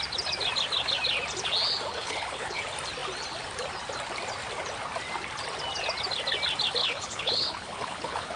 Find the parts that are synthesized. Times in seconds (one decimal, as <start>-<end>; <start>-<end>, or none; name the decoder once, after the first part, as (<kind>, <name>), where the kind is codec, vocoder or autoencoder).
1.9-2.6 (codec, HILCodec); 6.8-8.4